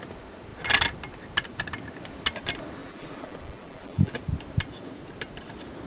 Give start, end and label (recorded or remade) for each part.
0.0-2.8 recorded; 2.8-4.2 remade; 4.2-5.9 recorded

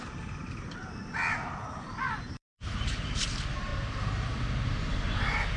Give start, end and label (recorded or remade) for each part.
0.0-0.8 remade; 0.8-1.9 recorded; 1.9-3.7 remade; 3.7-4.9 recorded; 4.9-5.6 remade

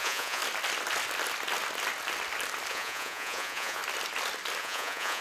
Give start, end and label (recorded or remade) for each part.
0.0-0.4 remade; 0.4-2.7 recorded; 2.7-3.8 remade; 3.8-4.6 recorded; 4.6-5.2 remade

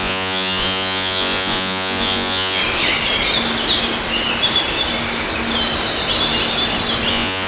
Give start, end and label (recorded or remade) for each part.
0.0-2.6 remade; 2.6-7.1 recorded; 7.1-7.5 remade

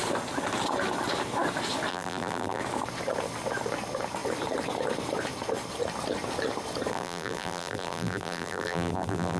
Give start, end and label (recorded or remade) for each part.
0.0-1.9 recorded; 1.9-2.6 remade; 2.6-6.9 recorded; 6.9-9.4 remade